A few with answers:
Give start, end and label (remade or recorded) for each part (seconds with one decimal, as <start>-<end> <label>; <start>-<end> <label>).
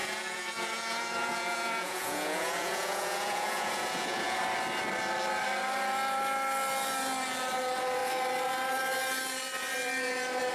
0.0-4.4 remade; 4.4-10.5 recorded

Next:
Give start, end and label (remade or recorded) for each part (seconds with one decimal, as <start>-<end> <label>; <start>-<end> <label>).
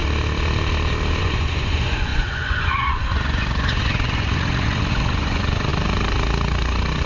0.0-1.2 recorded; 1.2-5.7 remade; 5.7-7.1 recorded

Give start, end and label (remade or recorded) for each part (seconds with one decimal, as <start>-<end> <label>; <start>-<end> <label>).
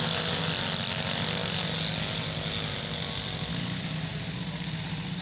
0.0-5.2 recorded